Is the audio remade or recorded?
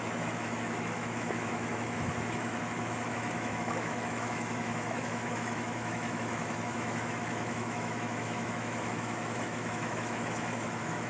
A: remade